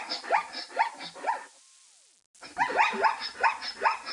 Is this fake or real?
real